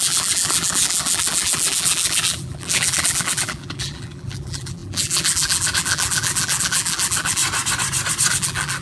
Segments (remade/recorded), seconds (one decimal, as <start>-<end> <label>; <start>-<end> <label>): 0.0-7.4 remade; 7.4-8.3 recorded; 8.3-8.8 remade